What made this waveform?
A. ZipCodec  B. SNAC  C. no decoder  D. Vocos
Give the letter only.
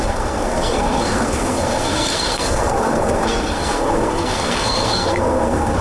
B